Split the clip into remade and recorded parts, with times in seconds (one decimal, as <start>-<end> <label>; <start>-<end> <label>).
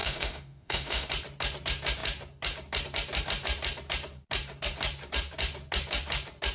0.0-1.1 remade; 1.1-6.5 recorded